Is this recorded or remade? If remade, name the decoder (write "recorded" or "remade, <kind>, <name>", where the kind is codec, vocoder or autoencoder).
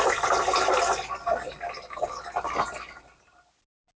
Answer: recorded